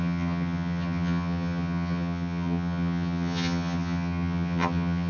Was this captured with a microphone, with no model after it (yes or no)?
no